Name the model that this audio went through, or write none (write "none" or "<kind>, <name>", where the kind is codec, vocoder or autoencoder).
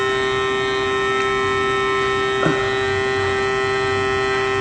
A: none